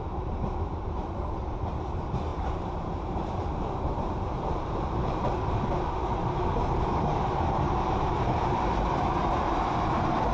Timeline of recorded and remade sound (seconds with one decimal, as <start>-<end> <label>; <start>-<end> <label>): 0.0-10.3 remade